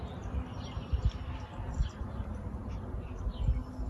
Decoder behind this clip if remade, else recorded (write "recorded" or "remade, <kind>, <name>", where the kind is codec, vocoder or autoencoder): recorded